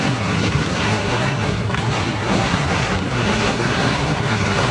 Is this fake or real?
fake